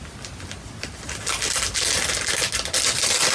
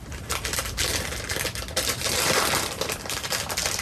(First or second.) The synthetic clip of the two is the second